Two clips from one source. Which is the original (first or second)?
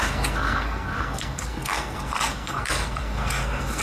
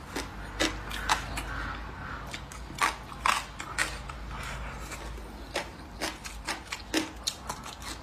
second